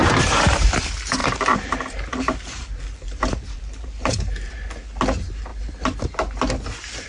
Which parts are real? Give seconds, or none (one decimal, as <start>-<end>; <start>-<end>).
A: 0.7-1.2; 4.5-7.1